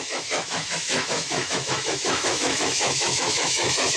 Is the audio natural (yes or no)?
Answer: no